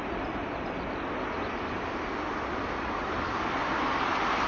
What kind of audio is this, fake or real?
real